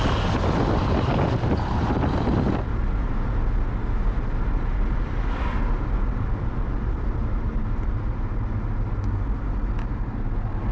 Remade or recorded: recorded